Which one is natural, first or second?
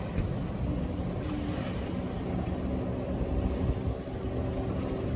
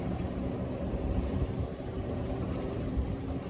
first